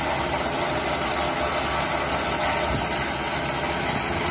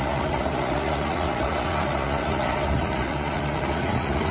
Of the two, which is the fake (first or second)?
second